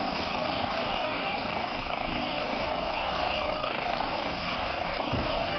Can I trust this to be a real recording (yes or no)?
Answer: no